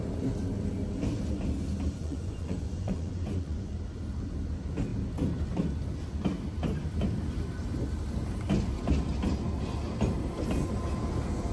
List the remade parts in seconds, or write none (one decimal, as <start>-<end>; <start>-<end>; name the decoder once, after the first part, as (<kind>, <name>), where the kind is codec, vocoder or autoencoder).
2.0-3.7 (vocoder, Vocos)